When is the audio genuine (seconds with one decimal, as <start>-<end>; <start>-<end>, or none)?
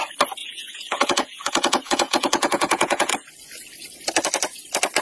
0.0-0.4; 3.1-5.0